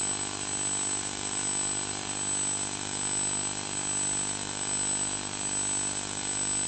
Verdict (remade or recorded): recorded